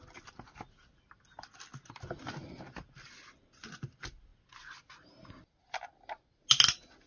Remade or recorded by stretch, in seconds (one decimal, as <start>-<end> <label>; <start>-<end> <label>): 0.0-7.1 recorded